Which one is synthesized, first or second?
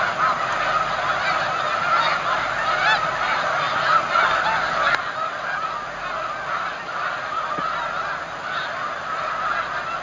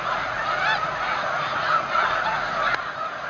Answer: second